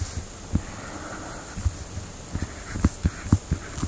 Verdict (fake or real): real